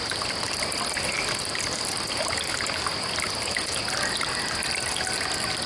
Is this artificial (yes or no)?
no